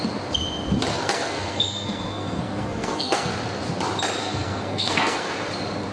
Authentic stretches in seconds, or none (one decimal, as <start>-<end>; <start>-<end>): 0.0-0.9; 3.3-4.2; 5.3-5.9